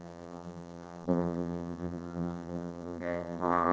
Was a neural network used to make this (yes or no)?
yes